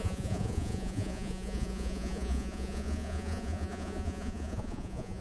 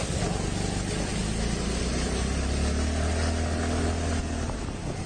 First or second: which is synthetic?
first